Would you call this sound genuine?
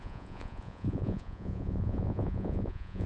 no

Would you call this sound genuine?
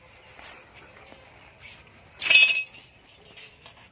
yes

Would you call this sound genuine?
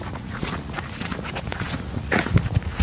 no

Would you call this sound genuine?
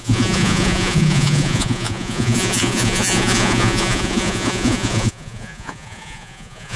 no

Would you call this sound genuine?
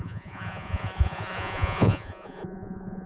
no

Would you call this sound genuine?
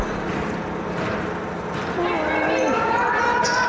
yes